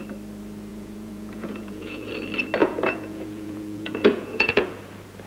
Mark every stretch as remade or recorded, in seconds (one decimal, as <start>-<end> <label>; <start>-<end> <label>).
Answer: 0.0-0.7 recorded; 0.7-2.1 remade; 2.1-2.6 recorded; 2.6-4.8 remade; 4.8-5.3 recorded